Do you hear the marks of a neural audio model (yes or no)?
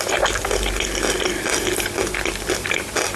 no